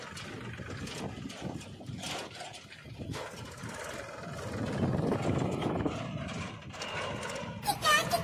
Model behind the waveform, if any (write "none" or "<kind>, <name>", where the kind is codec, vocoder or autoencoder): none